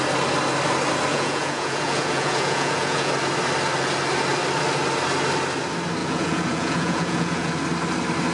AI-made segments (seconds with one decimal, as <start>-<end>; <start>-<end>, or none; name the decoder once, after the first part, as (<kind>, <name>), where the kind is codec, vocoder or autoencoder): 1.1-3.1 (vocoder, Vocos); 6.0-7.5